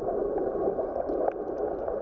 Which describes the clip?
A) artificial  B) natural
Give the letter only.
B